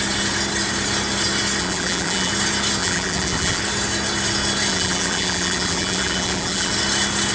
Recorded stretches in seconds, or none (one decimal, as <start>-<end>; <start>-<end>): 0.0-1.6; 2.3-2.8; 3.6-4.7; 6.7-7.3